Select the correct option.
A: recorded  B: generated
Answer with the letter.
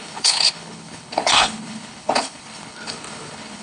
B